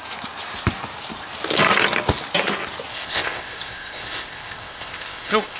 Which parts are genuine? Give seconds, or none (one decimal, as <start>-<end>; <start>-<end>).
0.0-2.9